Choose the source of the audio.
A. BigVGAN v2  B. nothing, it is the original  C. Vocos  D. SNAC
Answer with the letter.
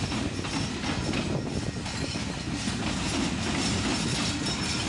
B